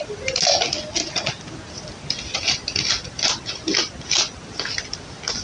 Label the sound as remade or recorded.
recorded